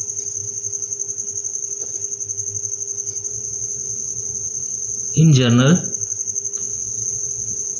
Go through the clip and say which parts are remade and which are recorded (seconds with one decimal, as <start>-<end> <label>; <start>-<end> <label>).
0.0-3.3 recorded; 3.3-5.2 remade; 5.2-6.6 recorded; 6.6-7.8 remade